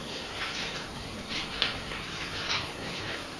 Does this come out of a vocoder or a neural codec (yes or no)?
yes